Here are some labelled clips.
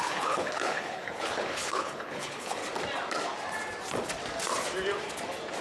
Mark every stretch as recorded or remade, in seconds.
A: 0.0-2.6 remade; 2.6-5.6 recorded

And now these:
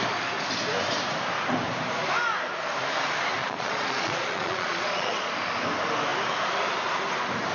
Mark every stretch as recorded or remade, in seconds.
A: 0.0-3.4 recorded; 3.4-5.3 remade; 5.3-7.5 recorded

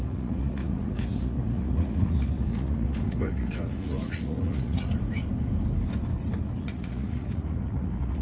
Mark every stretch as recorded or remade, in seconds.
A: 0.0-4.9 remade; 4.9-6.6 recorded; 6.6-8.2 remade

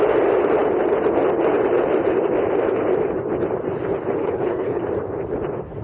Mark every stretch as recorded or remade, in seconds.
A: 0.0-4.2 recorded; 4.2-4.8 remade; 4.8-5.8 recorded

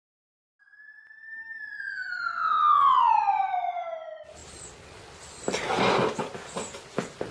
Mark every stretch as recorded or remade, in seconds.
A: 0.0-2.3 recorded; 2.3-3.1 remade; 3.1-7.3 recorded